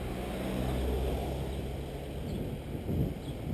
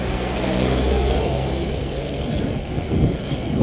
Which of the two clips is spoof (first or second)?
second